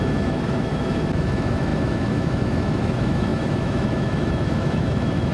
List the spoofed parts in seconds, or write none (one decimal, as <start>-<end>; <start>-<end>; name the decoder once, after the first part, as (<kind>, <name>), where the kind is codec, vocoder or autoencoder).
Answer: 0.0-5.3 (autoencoder, DAC-VAE)